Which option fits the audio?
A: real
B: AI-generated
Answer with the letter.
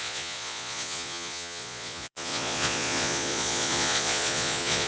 B